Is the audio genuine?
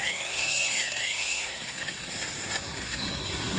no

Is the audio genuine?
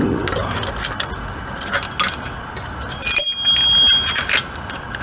yes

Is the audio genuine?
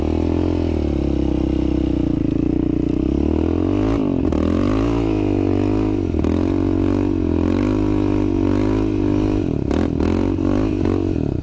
yes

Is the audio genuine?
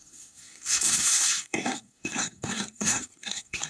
no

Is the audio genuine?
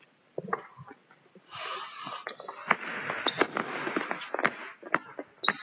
yes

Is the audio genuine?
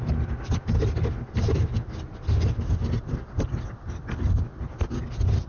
yes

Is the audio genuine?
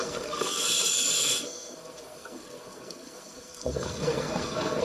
no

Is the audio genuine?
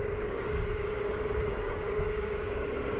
no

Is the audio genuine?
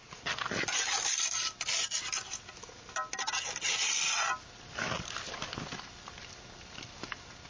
yes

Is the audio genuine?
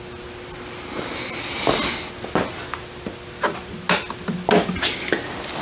yes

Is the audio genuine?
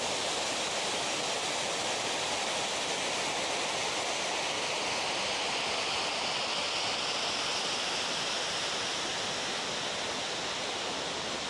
yes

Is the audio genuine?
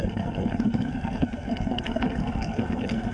no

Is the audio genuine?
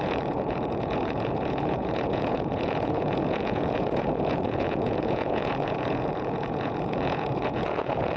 no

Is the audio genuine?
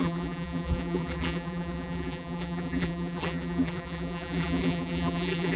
no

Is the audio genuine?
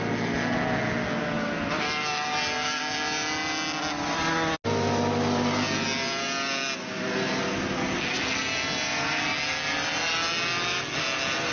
yes